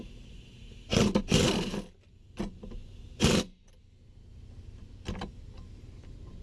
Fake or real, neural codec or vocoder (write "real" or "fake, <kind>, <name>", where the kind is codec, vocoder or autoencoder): real